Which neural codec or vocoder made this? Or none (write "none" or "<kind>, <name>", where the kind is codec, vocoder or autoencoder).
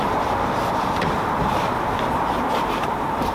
vocoder, BigVGAN v2